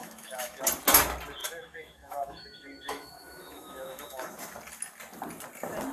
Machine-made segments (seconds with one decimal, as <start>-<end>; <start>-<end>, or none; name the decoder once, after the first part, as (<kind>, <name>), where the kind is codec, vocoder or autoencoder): 0.0-0.6 (autoencoder, DAC-VAE); 1.4-4.3